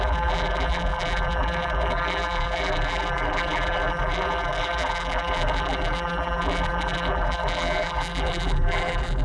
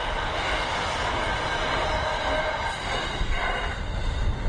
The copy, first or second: first